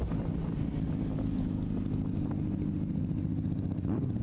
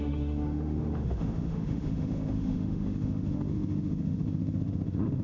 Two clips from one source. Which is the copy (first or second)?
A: second